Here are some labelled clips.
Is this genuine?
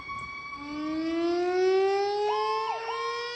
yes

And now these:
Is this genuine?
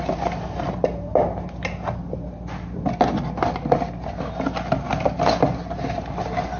yes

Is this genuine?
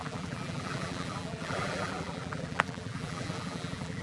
no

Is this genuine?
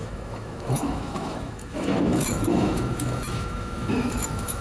no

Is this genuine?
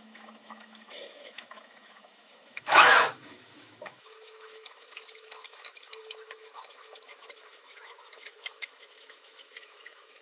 no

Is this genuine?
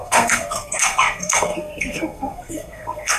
no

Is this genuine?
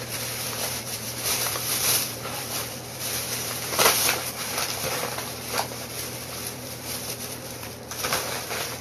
no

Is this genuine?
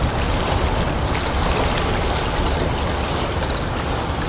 yes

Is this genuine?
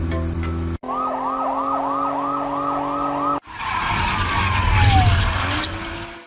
yes